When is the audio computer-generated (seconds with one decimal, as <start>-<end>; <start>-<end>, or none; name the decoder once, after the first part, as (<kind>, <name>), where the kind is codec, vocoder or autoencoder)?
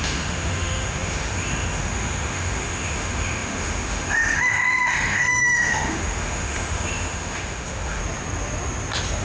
0.0-8.0 (autoencoder, DAC-VAE)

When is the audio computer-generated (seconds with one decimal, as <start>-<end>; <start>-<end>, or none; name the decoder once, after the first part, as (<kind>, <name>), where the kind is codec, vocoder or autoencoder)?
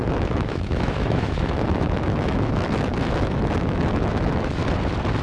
0.0-4.6 (autoencoder, DAC-VAE)